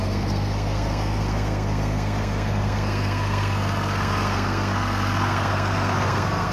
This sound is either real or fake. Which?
fake